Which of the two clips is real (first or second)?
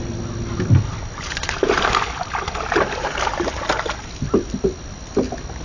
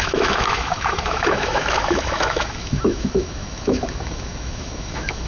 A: first